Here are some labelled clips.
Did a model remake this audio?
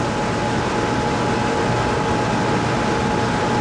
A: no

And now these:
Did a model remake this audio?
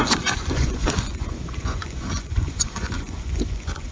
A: yes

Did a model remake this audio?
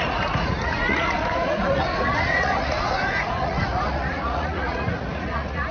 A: yes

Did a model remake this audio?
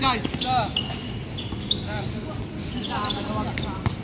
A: no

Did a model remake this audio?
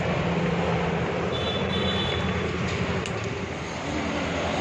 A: no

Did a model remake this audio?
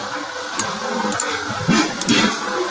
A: no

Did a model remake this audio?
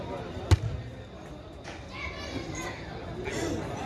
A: no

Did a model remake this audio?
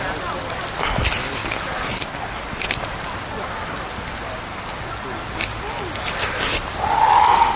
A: no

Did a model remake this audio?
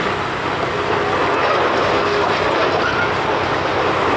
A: no